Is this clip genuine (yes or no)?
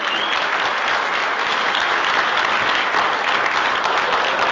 yes